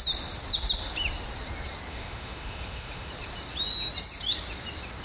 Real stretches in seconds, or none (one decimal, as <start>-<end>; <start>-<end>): 0.0-1.9; 3.1-5.0